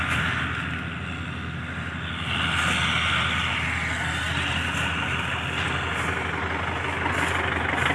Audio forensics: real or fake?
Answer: real